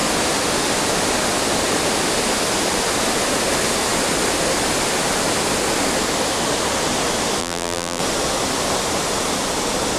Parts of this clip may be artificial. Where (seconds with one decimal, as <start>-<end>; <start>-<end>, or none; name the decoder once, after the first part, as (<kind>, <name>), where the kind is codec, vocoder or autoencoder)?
7.4-8.0 (vocoder, BigVGAN v2)